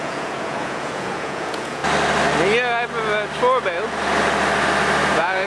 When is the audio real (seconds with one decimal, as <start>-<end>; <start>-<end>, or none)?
1.8-5.1